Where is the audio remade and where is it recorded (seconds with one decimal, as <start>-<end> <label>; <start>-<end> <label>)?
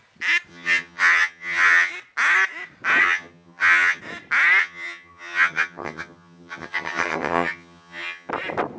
0.0-0.5 recorded; 0.5-1.9 remade; 1.9-3.0 recorded; 3.0-4.0 remade; 4.0-4.6 recorded; 4.6-8.3 remade; 8.3-8.8 recorded